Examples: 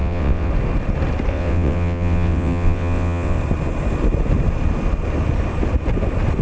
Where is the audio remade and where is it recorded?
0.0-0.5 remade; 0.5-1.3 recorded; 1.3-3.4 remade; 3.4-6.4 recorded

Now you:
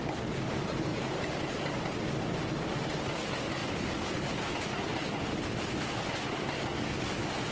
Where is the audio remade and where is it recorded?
0.0-0.9 recorded; 0.9-1.5 remade; 1.5-7.5 recorded

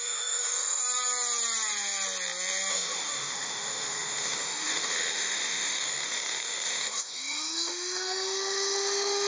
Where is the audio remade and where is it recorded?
0.0-0.8 remade; 0.8-2.7 recorded; 2.7-9.3 remade